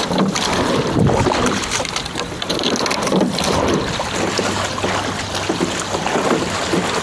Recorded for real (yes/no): yes